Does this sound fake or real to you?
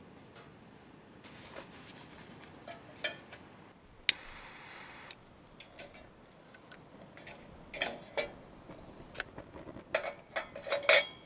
real